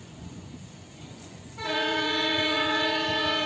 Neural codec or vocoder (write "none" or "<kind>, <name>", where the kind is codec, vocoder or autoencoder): vocoder, Vocos